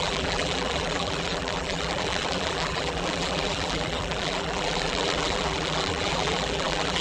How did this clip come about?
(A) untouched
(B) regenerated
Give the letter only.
B